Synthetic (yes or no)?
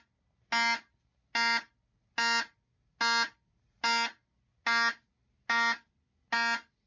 no